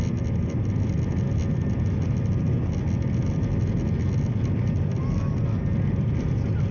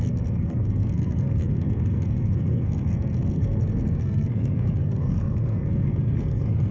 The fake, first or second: second